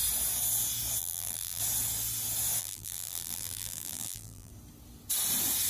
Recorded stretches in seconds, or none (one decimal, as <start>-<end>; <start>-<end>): 0.0-1.0; 1.6-2.6; 4.5-5.7

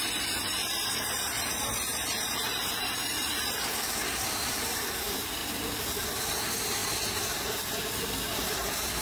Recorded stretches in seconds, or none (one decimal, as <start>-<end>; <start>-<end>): 1.9-2.6; 5.4-6.2

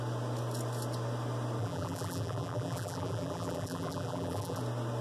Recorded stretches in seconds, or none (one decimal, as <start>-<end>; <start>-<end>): 0.0-1.6; 4.6-5.0

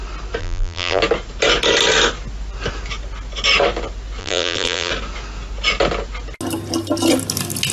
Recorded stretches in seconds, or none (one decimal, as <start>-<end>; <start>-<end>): 0.0-0.4; 1.0-4.2; 4.9-7.7

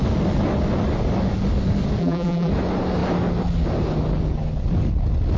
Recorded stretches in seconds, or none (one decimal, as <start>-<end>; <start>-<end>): 0.0-2.0; 2.5-5.4

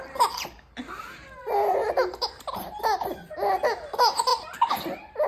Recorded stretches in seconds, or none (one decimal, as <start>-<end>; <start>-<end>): 0.0-1.8; 2.8-5.3